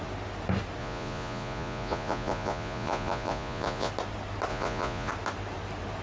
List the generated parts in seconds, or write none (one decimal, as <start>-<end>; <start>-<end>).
0.8-3.9; 4.5-5.1

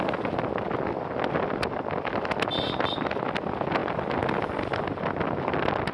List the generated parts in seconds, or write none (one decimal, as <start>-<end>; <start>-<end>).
none

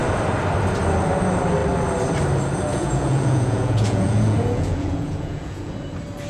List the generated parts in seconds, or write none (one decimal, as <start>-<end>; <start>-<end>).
2.7-5.7

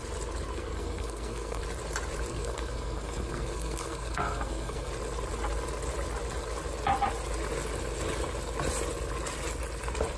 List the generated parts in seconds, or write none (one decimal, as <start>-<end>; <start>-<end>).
0.5-1.6; 2.3-4.9

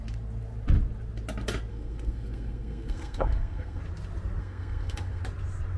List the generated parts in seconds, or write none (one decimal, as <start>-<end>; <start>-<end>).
1.7-3.8; 4.4-5.2

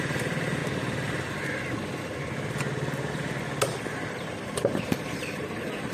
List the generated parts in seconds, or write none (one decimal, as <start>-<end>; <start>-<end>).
0.0-0.6; 4.1-5.9

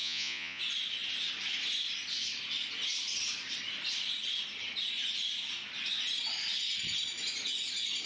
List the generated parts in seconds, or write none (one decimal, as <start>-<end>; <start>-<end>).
0.0-0.6

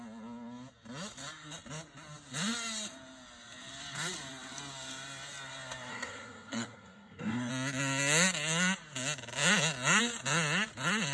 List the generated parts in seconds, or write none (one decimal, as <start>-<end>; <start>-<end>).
5.9-7.5